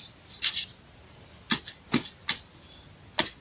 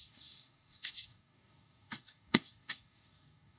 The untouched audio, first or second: first